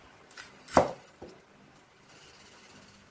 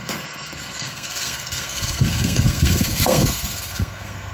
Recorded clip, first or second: first